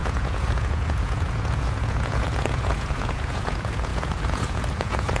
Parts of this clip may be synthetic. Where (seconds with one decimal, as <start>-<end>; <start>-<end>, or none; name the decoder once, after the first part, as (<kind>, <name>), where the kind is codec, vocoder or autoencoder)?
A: 0.0-5.2 (vocoder, Vocos)